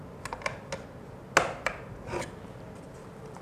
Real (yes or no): yes